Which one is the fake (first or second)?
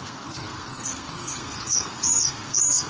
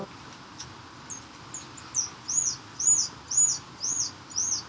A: first